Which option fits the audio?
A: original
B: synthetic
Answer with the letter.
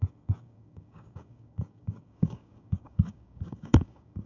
B